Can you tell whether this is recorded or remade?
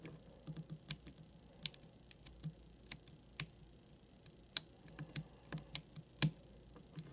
recorded